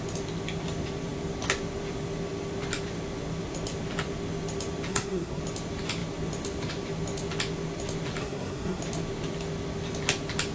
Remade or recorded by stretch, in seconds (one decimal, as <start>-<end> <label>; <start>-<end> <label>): 0.0-4.9 recorded; 4.9-5.4 remade; 5.4-8.2 recorded; 8.2-8.8 remade; 8.8-10.5 recorded